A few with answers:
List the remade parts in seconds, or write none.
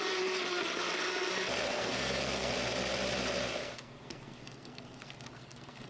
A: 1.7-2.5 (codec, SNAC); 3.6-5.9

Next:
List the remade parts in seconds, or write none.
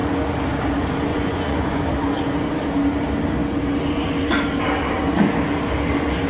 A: 1.1-1.9 (vocoder, Vocos)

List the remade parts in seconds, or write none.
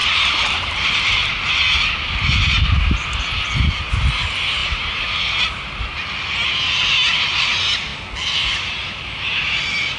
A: 0.0-1.6 (vocoder, BigVGAN v2); 4.6-5.4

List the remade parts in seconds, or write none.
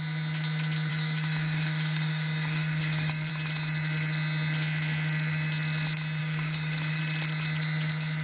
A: 0.9-3.3 (codec, DAC); 6.2-7.0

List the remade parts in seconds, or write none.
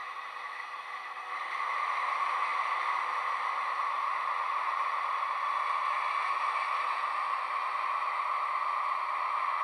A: 0.0-0.8 (vocoder, BigVGAN v2)